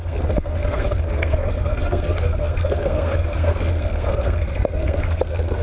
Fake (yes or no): yes